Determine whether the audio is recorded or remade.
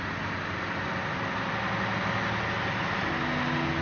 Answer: recorded